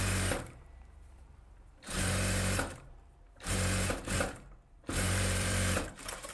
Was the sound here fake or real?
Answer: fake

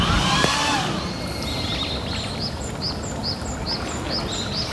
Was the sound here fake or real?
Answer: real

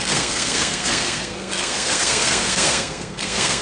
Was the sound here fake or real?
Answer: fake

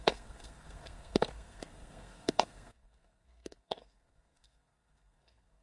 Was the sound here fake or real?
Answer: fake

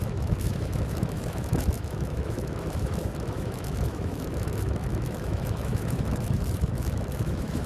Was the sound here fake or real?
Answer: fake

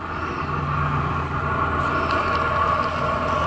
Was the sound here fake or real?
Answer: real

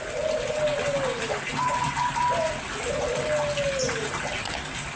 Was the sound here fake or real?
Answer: real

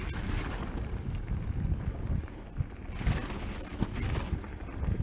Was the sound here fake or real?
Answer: real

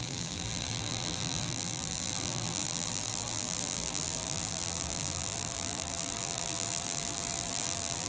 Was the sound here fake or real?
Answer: fake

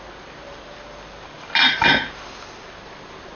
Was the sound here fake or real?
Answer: real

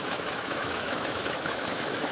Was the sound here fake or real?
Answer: fake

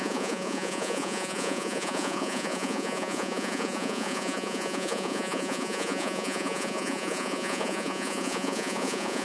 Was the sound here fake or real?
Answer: fake